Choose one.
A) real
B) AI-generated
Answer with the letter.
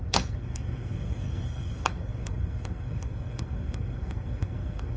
B